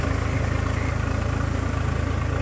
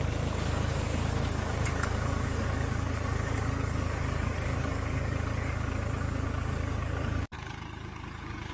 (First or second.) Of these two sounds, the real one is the first